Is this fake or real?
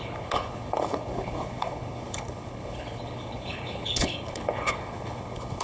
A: fake